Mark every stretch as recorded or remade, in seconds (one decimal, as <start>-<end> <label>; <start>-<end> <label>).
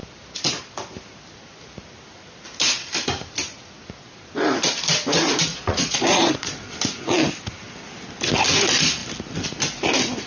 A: 0.0-5.5 recorded; 5.5-6.7 remade; 6.7-10.3 recorded